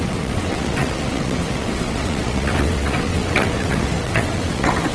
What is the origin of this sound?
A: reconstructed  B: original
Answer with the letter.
A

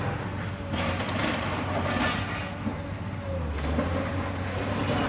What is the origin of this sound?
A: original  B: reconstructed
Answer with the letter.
A